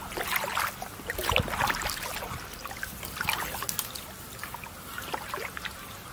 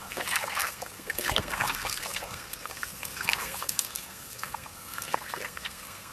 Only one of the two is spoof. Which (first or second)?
second